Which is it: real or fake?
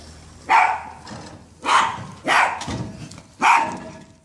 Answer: real